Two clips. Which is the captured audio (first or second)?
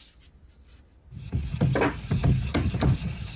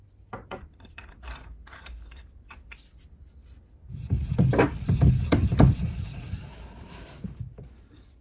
first